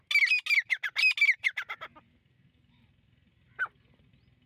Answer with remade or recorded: recorded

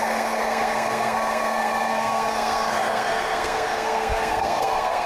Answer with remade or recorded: remade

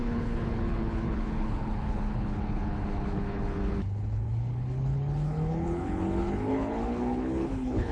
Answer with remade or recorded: remade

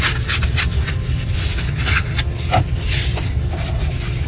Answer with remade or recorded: recorded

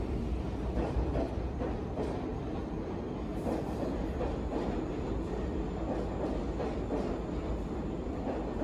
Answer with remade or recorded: recorded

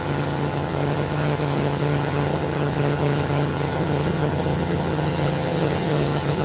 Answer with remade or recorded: remade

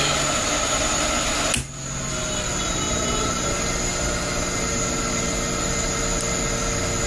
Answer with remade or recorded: recorded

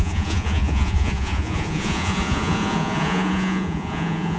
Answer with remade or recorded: remade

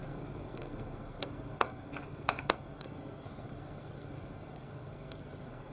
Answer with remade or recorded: remade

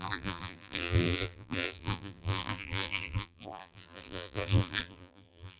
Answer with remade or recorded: remade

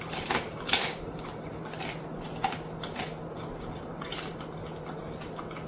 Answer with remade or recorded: recorded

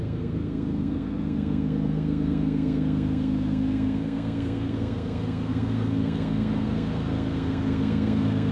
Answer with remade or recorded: remade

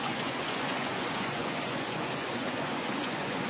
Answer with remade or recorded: remade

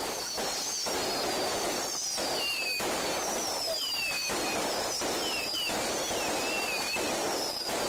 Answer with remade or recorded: recorded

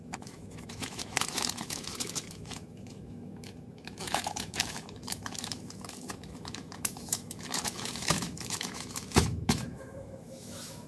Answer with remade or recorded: remade